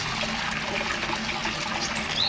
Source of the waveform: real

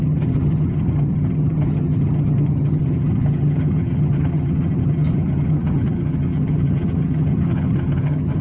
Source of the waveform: fake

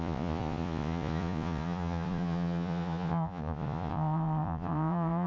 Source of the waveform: fake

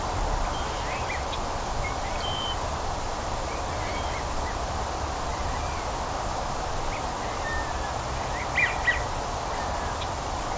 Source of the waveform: real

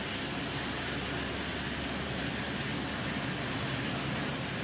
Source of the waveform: real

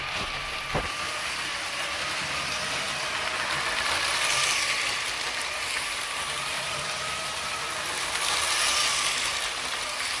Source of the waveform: real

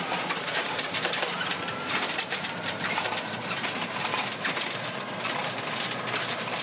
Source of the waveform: fake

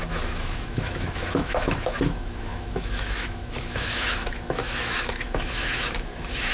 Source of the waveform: fake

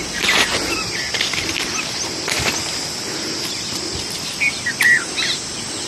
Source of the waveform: real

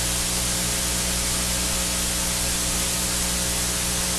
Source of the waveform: real